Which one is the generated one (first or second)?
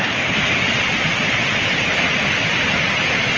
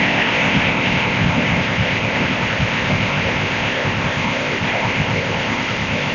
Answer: second